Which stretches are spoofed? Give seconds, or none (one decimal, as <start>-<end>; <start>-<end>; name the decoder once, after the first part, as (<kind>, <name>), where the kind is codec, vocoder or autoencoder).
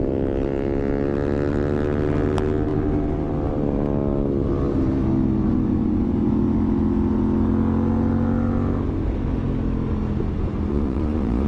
10.7-11.5 (vocoder, Vocos)